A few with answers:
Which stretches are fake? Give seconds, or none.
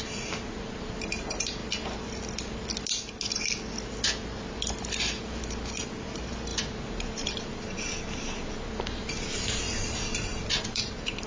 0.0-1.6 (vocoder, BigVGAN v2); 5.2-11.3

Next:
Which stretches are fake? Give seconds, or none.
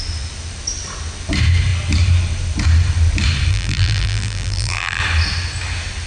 3.5-5.0 (vocoder, BigVGAN v2)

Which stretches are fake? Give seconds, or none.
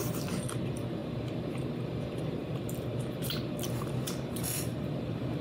0.0-5.4 (vocoder, BigVGAN v2)